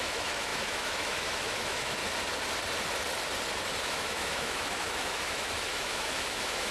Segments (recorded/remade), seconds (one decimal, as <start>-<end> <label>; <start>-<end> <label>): 0.0-2.0 remade; 2.0-3.8 recorded; 3.8-6.7 remade